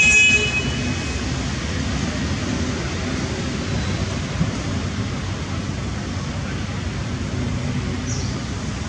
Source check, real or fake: real